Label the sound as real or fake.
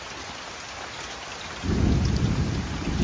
real